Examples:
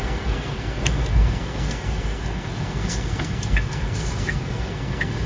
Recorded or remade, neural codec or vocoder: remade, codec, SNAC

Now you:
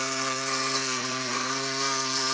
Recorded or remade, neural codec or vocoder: remade, codec, SNAC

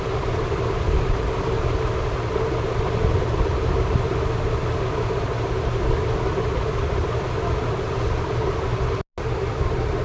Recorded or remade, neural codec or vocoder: recorded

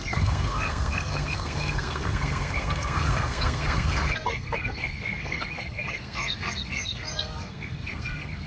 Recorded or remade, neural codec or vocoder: remade, codec, SNAC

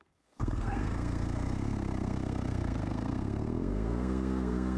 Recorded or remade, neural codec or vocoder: remade, codec, SNAC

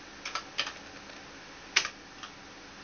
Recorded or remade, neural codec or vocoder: recorded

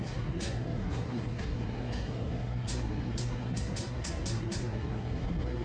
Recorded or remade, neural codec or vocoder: remade, codec, SNAC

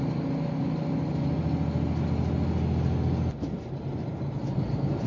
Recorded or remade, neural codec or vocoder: recorded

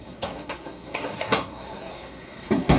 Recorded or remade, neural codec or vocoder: remade, codec, SNAC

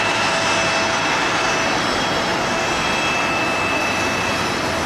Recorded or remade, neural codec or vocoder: recorded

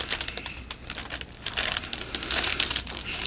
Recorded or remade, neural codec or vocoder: recorded